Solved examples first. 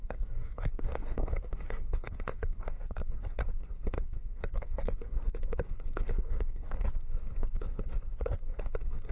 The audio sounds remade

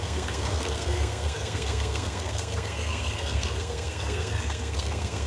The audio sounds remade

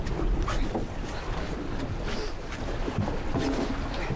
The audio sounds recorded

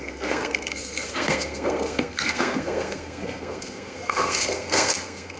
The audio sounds remade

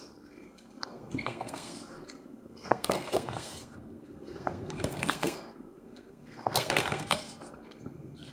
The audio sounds remade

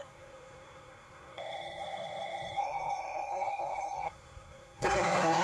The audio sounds remade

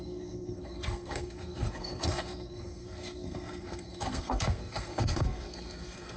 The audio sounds remade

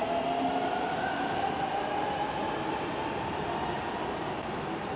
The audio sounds recorded